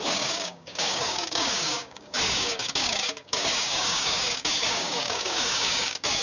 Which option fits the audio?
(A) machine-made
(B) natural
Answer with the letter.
A